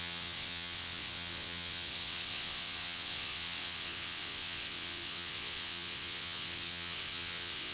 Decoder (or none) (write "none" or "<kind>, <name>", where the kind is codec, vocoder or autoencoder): vocoder, WaveNeXt